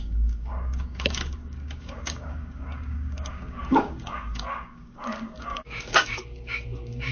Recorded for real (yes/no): no